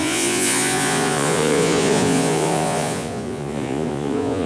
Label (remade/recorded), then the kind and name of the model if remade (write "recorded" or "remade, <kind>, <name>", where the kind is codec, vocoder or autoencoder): remade, vocoder, Vocos